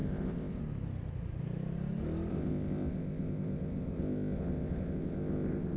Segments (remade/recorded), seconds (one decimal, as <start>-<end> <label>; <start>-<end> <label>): 0.0-0.6 remade; 0.6-2.3 recorded; 2.3-5.8 remade